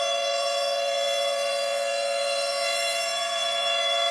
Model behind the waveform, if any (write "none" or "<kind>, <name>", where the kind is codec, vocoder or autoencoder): vocoder, Vocos